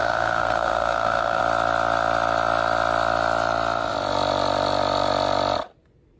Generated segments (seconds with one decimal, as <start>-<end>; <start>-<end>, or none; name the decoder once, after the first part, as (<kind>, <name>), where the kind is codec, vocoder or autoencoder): 0.0-1.4 (codec, SNAC)